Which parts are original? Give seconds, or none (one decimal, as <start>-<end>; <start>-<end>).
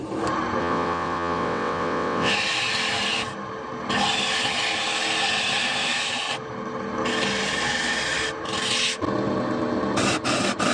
0.0-0.6; 2.3-10.7